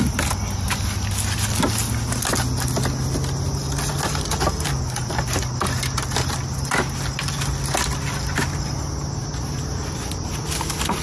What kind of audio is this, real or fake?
real